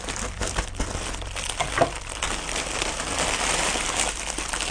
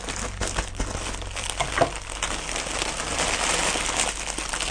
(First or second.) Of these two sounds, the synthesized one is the first